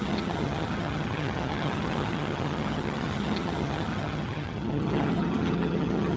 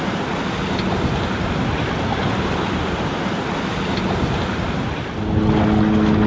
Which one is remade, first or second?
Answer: first